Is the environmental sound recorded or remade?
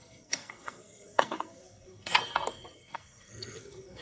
remade